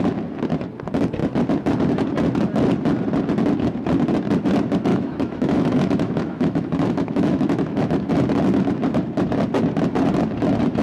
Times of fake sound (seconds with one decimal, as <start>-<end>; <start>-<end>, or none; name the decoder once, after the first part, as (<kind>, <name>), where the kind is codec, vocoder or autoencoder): 4.9-8.1 (autoencoder, DAC-VAE)